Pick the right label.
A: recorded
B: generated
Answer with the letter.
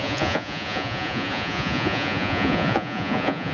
B